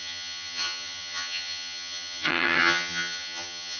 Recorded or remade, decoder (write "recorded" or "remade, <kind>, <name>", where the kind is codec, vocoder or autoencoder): remade, vocoder, HiFi-GAN